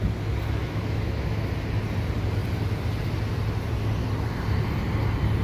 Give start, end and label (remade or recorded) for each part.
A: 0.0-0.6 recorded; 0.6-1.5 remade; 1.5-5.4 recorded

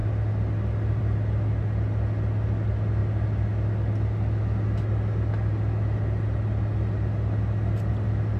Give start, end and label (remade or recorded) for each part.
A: 0.0-8.4 recorded

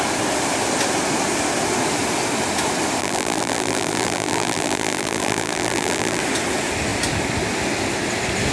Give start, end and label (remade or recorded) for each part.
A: 0.0-3.0 recorded; 3.0-6.2 remade; 6.2-8.5 recorded

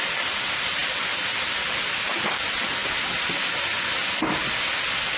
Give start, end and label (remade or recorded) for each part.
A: 0.0-5.2 recorded